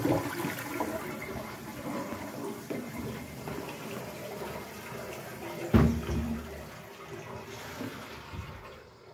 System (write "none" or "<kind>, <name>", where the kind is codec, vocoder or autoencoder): none